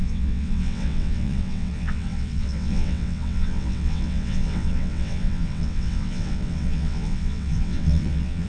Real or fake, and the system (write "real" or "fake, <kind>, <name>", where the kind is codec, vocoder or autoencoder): fake, vocoder, WaveNeXt